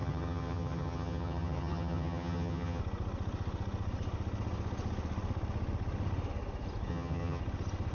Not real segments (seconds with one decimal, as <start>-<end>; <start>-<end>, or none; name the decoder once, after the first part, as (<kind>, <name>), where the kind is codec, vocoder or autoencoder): 0.0-2.8 (vocoder, HiFi-GAN); 6.9-7.4